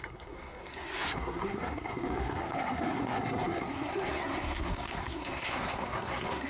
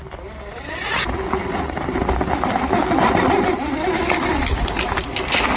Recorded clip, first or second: second